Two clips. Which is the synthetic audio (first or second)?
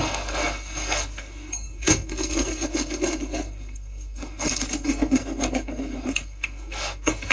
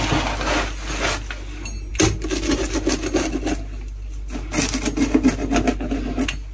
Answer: first